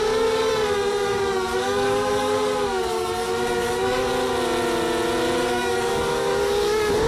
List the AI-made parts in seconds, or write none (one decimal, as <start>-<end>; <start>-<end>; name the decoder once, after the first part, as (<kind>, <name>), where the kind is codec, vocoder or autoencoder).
0.0-4.1 (codec, DAC); 5.4-7.1

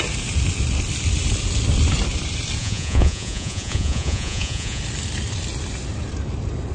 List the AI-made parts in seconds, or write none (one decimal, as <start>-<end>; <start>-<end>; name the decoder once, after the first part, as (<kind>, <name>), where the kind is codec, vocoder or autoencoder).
2.6-4.8 (vocoder, Vocos)